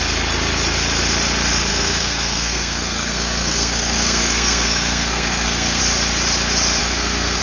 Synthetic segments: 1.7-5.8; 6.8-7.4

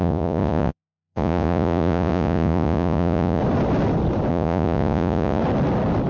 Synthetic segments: 0.0-3.4; 4.3-5.4

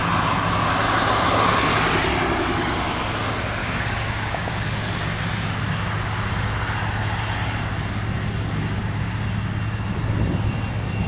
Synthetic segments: 3.6-4.5

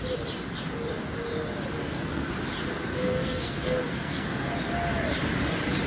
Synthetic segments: 1.8-2.3; 2.9-4.5

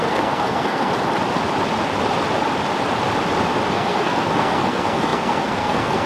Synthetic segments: 0.0-0.9; 3.7-6.1

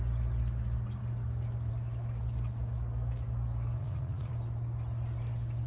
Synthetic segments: 3.8-4.3

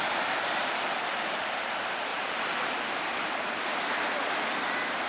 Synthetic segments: 0.6-1.7; 2.1-2.9

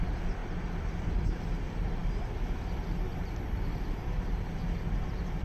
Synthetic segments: 0.0-2.0